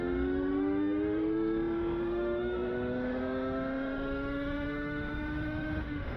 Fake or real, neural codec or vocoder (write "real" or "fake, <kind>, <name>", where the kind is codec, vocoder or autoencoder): fake, autoencoder, DAC-VAE